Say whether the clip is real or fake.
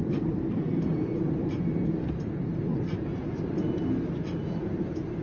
real